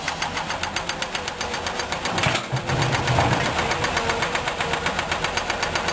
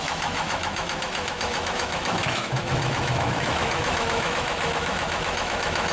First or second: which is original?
first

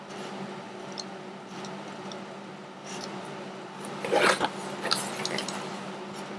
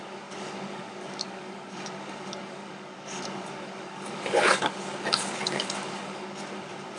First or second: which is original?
first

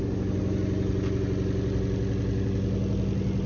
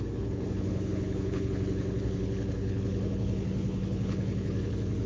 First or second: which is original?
first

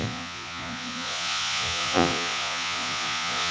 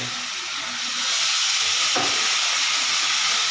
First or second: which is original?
second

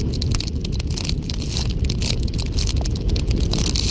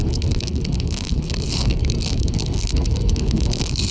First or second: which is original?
first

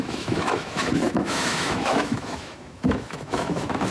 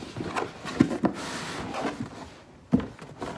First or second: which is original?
second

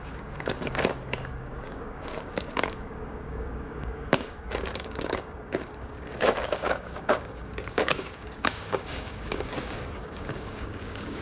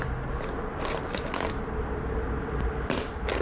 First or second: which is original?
second